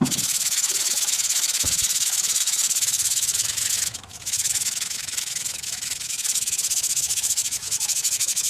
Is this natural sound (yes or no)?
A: no